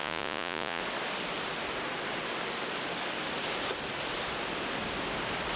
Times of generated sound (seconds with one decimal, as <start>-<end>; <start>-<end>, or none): 0.0-0.8